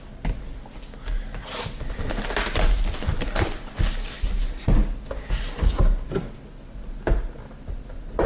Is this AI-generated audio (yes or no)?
no